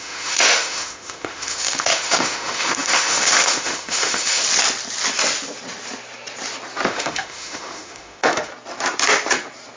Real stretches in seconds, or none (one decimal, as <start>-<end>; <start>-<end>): 4.4-6.9; 8.5-9.8